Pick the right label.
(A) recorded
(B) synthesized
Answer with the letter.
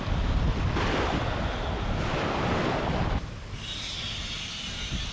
A